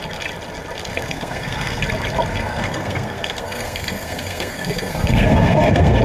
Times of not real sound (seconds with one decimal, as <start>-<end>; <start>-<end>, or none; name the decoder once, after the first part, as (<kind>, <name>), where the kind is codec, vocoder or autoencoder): 0.9-1.8 (codec, SNAC); 2.3-6.0